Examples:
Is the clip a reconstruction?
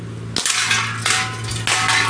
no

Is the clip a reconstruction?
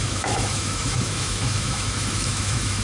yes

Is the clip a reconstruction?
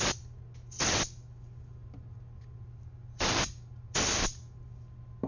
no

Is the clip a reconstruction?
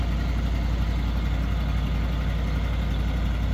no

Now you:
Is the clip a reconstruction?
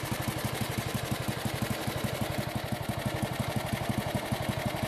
no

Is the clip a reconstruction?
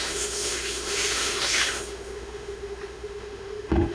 yes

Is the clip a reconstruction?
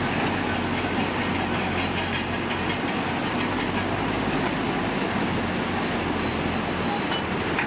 no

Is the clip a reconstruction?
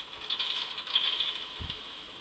yes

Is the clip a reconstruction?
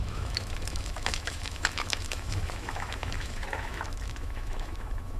yes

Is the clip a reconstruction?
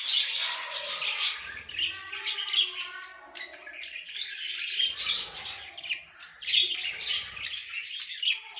no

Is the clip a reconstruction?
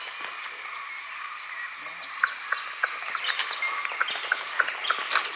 no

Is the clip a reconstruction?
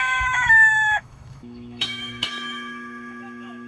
yes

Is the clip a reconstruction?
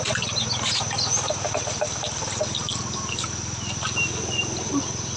no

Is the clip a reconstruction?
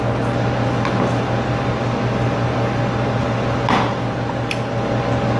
no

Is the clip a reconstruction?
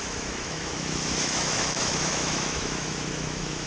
yes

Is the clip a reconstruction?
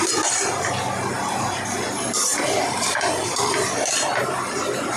no